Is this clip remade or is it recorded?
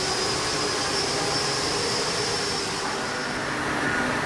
remade